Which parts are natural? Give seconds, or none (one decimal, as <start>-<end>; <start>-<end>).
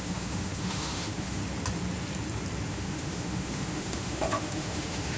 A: 1.4-2.7